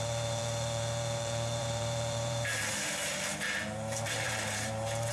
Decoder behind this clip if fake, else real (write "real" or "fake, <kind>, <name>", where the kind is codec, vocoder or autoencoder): fake, vocoder, BigVGAN v2